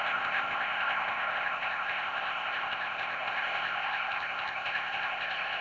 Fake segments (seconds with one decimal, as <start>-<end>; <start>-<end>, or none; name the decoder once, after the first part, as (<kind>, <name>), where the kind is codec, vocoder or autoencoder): 0.0-5.6 (codec, ZipCodec)